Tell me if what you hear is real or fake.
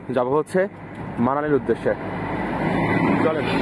real